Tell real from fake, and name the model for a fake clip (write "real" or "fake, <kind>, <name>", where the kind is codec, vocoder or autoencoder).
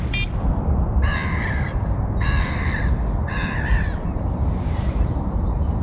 real